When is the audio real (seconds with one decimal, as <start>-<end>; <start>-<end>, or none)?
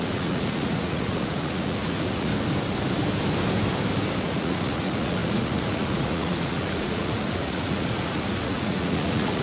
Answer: 2.3-4.2